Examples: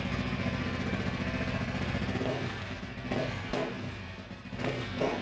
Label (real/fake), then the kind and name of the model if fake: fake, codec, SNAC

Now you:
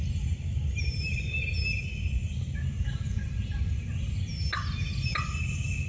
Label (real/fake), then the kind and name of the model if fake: real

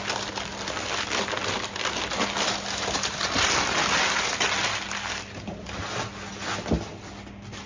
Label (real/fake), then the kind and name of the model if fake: real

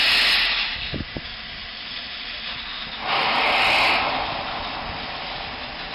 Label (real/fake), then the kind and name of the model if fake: real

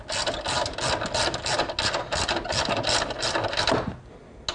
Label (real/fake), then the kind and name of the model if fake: real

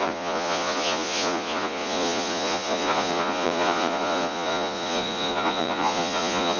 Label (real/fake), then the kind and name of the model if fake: fake, vocoder, Vocos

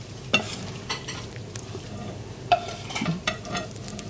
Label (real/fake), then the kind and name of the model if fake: real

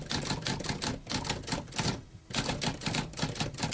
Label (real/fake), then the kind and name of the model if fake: real